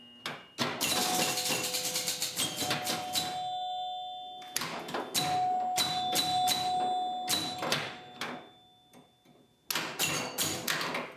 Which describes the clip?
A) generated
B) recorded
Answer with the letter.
B